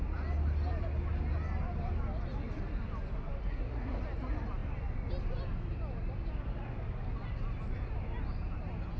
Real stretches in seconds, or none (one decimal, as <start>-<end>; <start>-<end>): 0.0-3.5; 4.0-9.0